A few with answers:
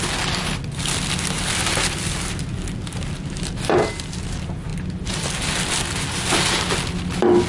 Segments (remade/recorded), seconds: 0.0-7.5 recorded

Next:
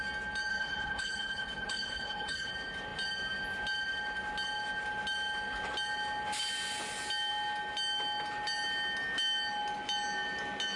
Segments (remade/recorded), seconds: 0.0-0.5 recorded; 0.5-2.5 remade; 2.5-10.8 recorded

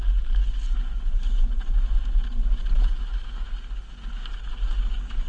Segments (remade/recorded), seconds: 0.0-5.3 recorded

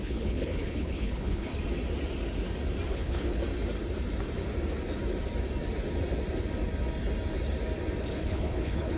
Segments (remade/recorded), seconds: 0.0-1.5 remade; 1.5-2.9 recorded; 2.9-3.4 remade; 3.4-8.0 recorded; 8.0-9.0 remade